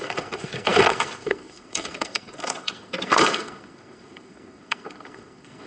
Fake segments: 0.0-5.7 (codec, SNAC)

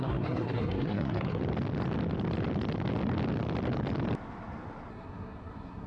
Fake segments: 0.0-1.4 (codec, SNAC); 4.9-5.9

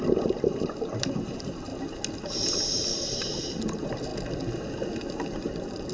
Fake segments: 0.0-1.7 (vocoder, BigVGAN v2); 2.6-4.1; 5.4-5.9

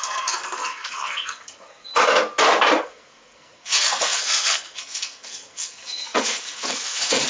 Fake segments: 0.0-1.9 (codec, SNAC); 2.8-7.3

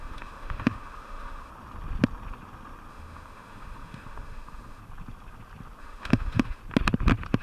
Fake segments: 0.0-1.5 (autoencoder, DAC-VAE); 2.9-4.8; 5.8-6.6